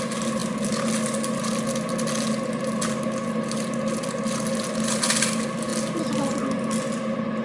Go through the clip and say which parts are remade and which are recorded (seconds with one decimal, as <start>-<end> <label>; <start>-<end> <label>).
0.0-7.4 recorded